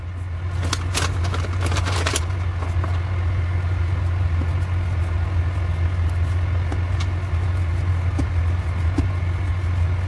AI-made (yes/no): no